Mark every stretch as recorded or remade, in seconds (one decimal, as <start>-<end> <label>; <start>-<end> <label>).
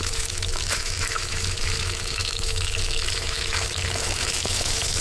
0.0-5.0 remade